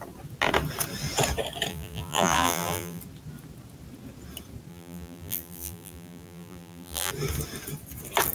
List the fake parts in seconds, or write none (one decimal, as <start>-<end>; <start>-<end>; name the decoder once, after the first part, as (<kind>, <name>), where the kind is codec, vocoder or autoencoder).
1.7-3.0 (vocoder, BigVGAN v2); 4.7-7.1